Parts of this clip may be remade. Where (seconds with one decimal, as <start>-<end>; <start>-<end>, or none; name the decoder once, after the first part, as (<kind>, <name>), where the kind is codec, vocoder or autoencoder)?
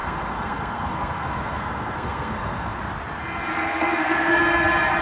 0.0-2.8 (codec, SNAC); 3.5-4.4